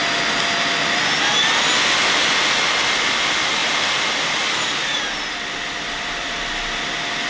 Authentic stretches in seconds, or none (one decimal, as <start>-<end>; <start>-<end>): 0.0-3.6; 5.0-7.3